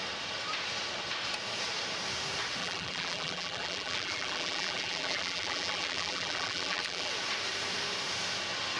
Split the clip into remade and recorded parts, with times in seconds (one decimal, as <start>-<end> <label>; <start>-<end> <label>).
0.0-2.6 recorded; 2.6-7.1 remade; 7.1-8.8 recorded